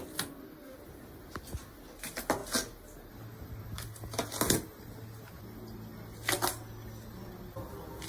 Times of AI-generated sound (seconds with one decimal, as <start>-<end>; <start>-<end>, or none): none